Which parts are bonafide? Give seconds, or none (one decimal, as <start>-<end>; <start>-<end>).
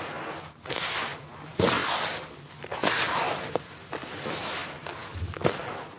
0.0-6.0